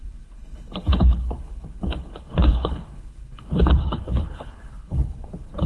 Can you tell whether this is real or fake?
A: fake